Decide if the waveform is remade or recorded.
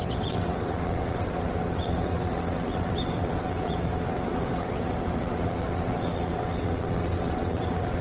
remade